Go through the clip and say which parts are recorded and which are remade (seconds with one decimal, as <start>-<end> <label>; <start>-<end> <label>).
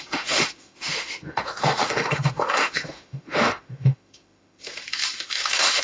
0.0-5.8 remade